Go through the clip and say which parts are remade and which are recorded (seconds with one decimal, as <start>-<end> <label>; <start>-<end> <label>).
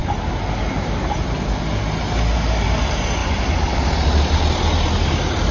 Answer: 0.0-5.5 recorded